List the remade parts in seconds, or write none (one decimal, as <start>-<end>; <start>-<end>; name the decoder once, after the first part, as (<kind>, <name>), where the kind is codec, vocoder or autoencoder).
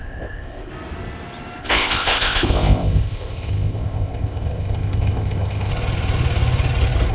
0.0-0.7 (codec, ZipCodec); 1.6-5.7